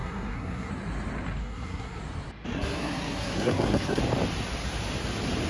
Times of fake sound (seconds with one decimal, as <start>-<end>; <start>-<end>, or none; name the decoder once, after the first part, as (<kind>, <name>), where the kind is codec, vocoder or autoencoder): 0.0-0.7 (codec, SNAC); 1.4-2.0; 2.5-4.0